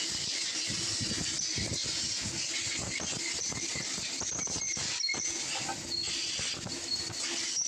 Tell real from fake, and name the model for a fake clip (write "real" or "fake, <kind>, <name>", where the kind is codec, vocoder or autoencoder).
real